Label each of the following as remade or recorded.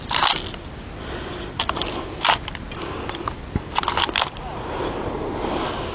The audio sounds recorded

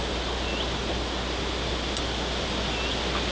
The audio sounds recorded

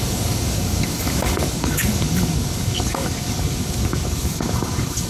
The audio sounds remade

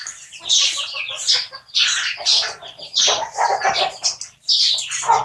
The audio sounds recorded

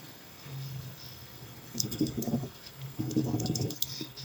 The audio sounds remade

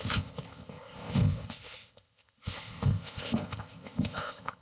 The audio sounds remade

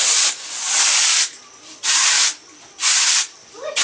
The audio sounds recorded